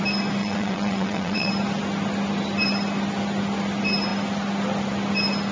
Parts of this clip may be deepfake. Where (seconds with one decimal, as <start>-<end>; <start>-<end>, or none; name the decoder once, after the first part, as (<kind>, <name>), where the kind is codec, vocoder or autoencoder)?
0.4-1.5 (vocoder, WaveNeXt)